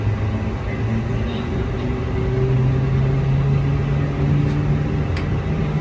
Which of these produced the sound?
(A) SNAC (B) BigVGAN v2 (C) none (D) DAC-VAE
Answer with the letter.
C